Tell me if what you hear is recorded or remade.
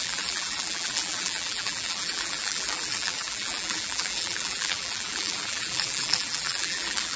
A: remade